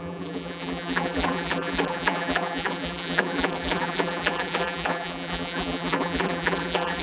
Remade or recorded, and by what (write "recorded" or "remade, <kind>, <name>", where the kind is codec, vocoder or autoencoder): remade, vocoder, BigVGAN v2